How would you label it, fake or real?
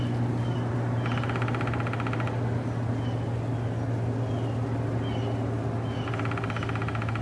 real